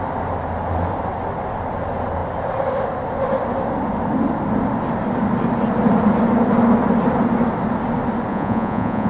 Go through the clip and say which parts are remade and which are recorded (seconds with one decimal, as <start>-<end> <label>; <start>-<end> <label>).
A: 0.0-8.3 recorded; 8.3-9.1 remade